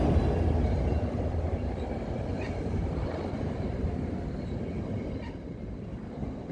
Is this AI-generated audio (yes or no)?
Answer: no